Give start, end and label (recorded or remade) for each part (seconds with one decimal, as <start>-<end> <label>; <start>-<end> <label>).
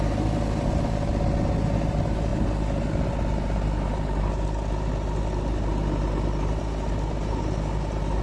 0.0-8.2 recorded